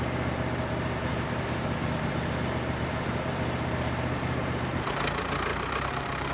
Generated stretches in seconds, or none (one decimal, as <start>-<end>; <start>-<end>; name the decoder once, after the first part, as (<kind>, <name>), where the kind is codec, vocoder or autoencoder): 1.1-4.9 (vocoder, BigVGAN v2); 5.5-6.3